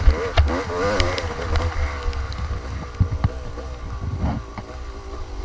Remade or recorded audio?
recorded